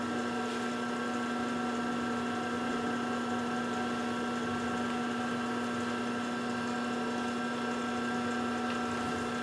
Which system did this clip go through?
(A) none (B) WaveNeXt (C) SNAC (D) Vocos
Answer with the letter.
A